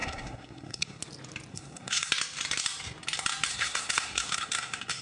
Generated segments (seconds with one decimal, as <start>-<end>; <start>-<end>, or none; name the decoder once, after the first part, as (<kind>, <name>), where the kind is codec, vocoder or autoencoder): 0.0-1.0 (codec, SNAC); 1.5-2.1; 3.5-5.0